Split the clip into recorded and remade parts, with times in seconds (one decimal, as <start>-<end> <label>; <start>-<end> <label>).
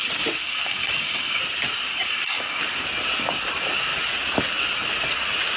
0.0-0.4 recorded; 0.4-1.4 remade; 1.4-1.9 recorded; 1.9-2.6 remade; 2.6-5.6 recorded